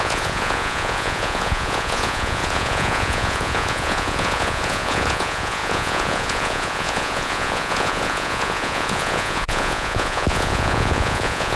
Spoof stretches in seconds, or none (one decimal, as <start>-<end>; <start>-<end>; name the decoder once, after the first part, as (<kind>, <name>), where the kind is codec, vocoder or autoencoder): 0.0-11.6 (vocoder, Vocos)